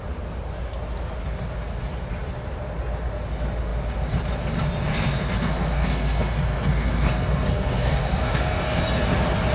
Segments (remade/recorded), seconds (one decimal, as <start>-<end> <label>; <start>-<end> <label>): 0.0-4.9 recorded; 4.9-8.8 remade; 8.8-9.5 recorded